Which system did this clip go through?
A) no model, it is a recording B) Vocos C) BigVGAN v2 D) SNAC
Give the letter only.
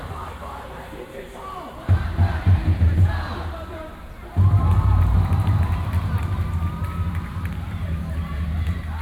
C